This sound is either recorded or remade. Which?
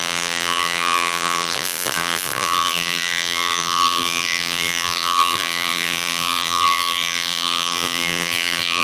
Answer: remade